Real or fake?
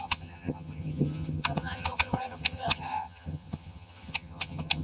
fake